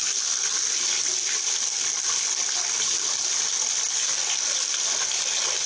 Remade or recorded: recorded